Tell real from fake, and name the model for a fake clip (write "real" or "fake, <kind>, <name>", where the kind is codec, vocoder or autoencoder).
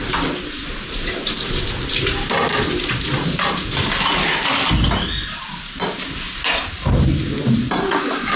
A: real